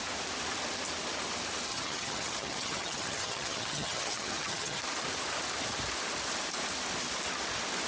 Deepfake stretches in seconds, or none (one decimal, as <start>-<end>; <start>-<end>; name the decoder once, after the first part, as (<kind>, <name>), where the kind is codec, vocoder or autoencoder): 1.7-4.8 (vocoder, HiFi-GAN)